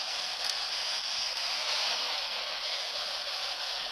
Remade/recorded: remade